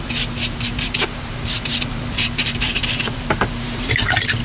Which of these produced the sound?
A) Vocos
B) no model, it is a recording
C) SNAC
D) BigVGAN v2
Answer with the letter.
D